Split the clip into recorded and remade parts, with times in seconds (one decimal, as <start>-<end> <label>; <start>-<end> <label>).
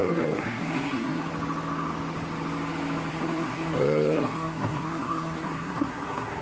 0.0-1.3 remade; 1.3-3.1 recorded; 3.1-6.4 remade